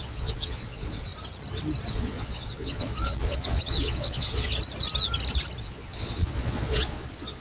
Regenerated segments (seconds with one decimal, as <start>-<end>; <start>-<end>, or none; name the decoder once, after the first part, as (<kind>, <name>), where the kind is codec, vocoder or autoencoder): 0.0-1.1 (vocoder, Vocos); 1.9-4.5; 5.6-7.4